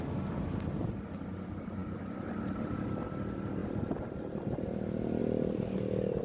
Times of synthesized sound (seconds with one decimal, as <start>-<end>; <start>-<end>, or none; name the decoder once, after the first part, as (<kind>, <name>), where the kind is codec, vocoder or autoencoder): none

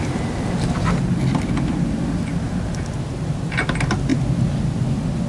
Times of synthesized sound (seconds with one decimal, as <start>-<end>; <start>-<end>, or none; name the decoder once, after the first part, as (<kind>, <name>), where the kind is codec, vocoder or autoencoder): none

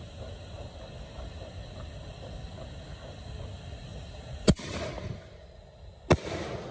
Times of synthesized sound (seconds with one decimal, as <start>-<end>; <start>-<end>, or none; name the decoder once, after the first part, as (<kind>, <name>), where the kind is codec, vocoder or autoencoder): 3.9-4.9 (vocoder, BigVGAN v2)

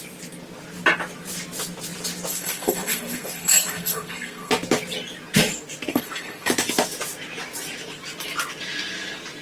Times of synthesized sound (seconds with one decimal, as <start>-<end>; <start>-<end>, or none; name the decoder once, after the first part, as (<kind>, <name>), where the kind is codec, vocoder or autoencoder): 2.3-4.5 (codec, SNAC); 5.9-6.5

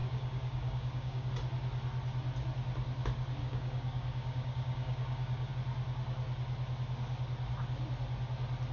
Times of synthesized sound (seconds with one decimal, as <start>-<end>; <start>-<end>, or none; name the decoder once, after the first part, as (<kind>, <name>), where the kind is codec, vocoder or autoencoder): 0.0-1.3 (codec, DAC); 3.4-5.5

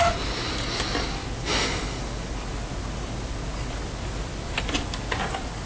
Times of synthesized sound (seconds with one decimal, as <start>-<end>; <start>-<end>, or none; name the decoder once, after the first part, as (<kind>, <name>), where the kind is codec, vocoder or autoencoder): 0.0-1.2 (vocoder, BigVGAN v2); 4.6-5.7

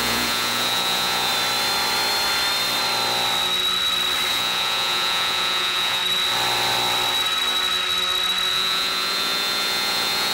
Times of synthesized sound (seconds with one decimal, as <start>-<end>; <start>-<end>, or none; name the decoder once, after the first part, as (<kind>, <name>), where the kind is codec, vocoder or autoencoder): 0.0-1.3 (vocoder, Vocos); 4.3-6.0; 8.5-10.3

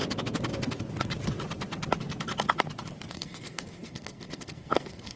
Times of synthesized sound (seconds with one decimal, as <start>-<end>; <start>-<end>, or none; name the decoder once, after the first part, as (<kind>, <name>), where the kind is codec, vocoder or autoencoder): 3.1-5.2 (codec, SNAC)